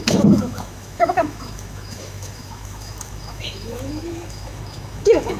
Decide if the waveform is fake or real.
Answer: fake